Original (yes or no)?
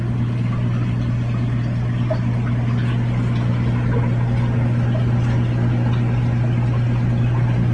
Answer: yes